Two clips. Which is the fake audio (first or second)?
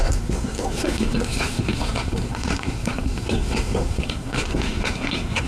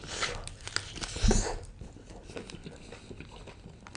first